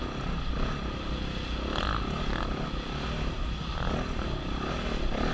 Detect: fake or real real